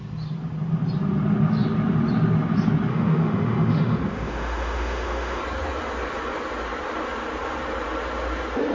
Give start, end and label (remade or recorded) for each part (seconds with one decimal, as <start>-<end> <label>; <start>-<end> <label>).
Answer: 0.0-2.9 recorded; 2.9-5.4 remade; 5.4-8.7 recorded